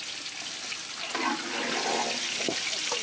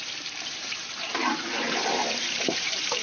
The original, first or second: first